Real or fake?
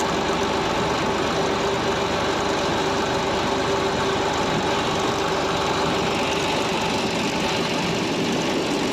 real